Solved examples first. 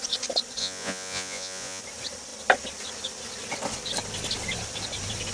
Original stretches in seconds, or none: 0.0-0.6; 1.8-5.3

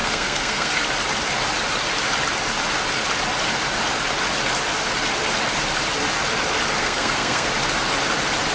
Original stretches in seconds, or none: 0.7-6.8; 7.5-8.5

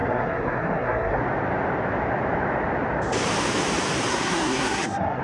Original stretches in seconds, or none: 1.2-4.1